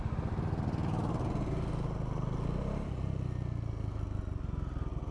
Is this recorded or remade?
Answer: recorded